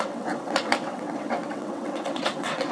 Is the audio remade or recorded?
remade